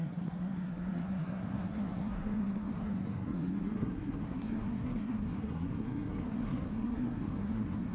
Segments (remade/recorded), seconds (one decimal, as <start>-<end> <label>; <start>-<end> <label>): 0.0-7.9 remade